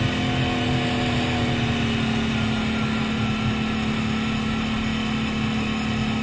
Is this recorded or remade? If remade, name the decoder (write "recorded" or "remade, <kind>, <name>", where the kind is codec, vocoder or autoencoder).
recorded